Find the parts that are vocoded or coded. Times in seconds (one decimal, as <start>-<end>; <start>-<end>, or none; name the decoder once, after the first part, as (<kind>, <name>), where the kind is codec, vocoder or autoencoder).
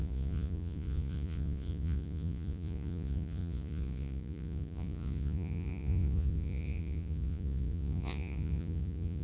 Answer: 0.0-9.2 (vocoder, Vocos)